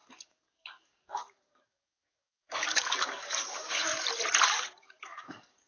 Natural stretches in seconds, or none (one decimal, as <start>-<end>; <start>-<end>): 3.9-4.5